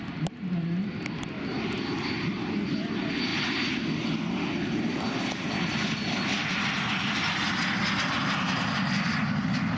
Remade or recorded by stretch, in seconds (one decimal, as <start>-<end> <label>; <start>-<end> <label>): 0.0-9.8 recorded